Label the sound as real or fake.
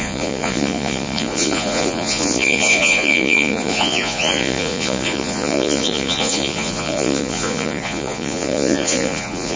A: fake